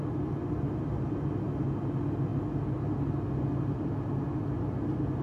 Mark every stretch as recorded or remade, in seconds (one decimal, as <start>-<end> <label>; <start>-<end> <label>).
0.0-5.2 recorded